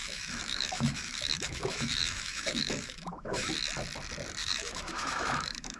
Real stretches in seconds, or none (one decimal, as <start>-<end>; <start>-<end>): 3.5-4.4